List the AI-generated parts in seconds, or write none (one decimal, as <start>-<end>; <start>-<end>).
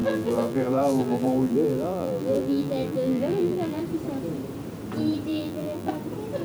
0.0-3.8; 5.3-5.9